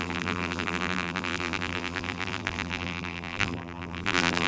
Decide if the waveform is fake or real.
fake